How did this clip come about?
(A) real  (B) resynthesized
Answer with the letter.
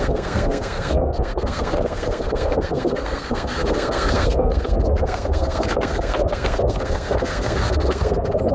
B